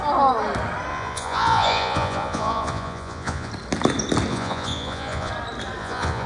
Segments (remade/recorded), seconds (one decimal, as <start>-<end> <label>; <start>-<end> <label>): 0.0-0.9 recorded; 0.9-3.5 remade; 3.5-4.3 recorded; 4.3-5.3 remade; 5.3-5.8 recorded; 5.8-6.3 remade